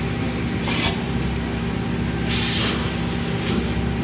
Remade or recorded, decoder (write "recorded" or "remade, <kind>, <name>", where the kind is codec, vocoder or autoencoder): recorded